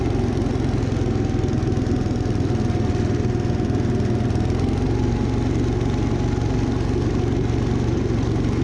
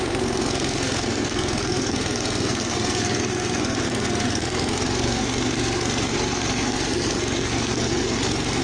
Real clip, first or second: first